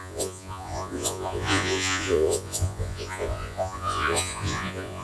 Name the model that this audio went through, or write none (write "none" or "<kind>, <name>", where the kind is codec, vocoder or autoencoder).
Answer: vocoder, Vocos